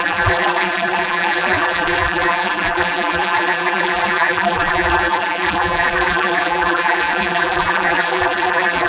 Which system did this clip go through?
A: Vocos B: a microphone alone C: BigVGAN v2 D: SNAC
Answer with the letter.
C